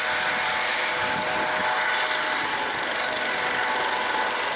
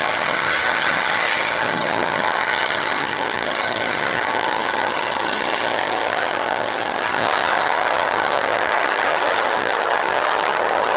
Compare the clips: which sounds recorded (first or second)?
first